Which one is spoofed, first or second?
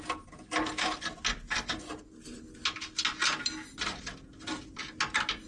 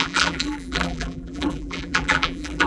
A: second